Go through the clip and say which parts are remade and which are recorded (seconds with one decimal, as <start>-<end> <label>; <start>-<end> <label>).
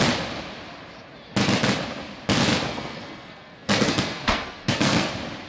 0.0-2.7 recorded; 2.7-5.1 remade; 5.1-5.5 recorded